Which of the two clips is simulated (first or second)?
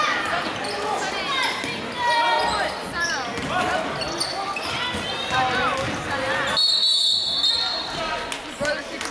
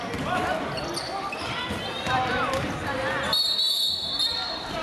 second